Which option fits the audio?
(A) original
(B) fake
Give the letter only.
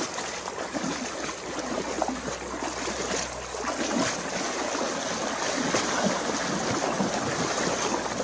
A